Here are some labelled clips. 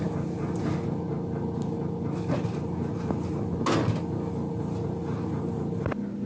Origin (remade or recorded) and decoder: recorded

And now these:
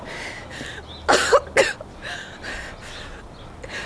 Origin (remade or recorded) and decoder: recorded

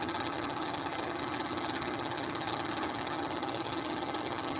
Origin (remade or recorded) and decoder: remade, vocoder, HiFi-GAN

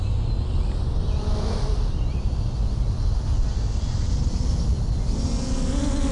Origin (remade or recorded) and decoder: recorded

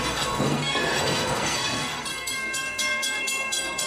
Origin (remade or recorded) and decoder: remade, codec, SNAC